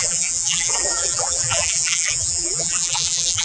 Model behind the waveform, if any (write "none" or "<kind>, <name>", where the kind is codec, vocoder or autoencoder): vocoder, BigVGAN v2